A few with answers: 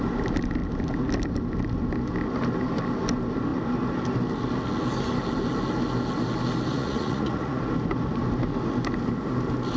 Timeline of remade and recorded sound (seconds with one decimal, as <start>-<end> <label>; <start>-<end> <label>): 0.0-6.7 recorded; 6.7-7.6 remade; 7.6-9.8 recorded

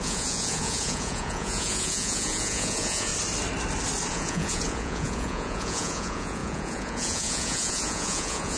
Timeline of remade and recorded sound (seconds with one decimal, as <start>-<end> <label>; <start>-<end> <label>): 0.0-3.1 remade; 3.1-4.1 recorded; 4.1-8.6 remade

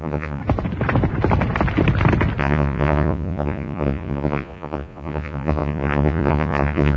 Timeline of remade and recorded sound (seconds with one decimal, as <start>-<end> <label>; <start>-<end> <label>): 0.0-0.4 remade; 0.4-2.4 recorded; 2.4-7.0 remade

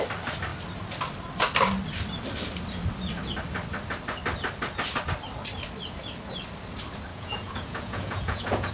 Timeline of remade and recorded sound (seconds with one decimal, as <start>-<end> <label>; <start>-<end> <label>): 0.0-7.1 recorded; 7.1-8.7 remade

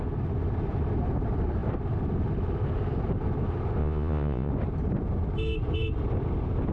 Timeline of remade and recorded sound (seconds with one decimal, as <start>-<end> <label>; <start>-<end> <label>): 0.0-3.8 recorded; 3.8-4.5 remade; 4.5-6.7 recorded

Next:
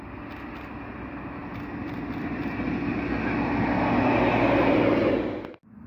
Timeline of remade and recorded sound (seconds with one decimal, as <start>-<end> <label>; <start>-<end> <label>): 0.0-5.9 recorded

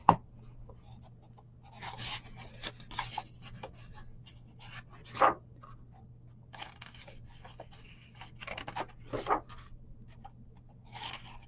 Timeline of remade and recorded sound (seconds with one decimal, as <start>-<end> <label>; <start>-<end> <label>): 0.0-11.5 recorded